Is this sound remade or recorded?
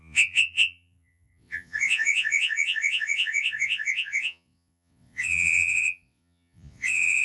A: remade